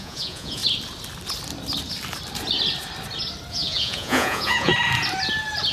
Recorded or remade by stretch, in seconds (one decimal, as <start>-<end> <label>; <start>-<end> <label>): 0.0-0.6 remade; 0.6-3.5 recorded; 3.5-4.7 remade; 4.7-5.7 recorded